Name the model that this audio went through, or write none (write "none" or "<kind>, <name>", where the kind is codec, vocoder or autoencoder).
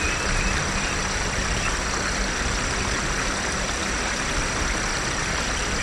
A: none